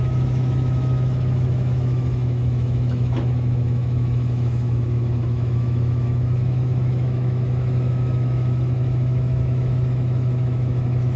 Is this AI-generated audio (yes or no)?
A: yes